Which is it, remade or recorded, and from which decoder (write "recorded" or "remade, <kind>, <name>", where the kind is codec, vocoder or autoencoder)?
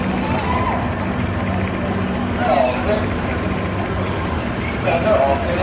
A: recorded